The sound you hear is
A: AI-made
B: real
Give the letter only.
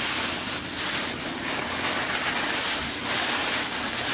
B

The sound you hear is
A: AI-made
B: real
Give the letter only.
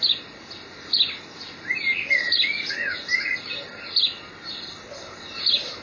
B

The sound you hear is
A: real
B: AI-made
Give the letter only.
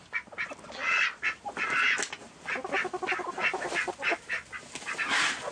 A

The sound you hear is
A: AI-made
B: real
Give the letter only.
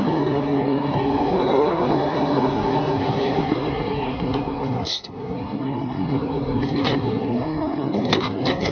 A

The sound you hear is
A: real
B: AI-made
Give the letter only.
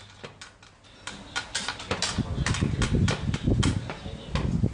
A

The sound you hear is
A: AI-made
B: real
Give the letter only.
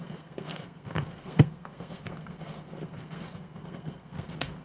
A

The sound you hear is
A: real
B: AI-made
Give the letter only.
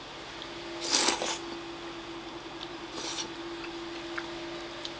A